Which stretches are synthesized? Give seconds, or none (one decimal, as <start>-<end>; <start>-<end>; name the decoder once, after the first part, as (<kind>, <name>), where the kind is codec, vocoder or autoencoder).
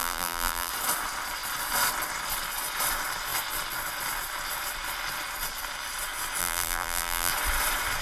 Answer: 0.0-0.7 (vocoder, BigVGAN v2); 6.4-7.3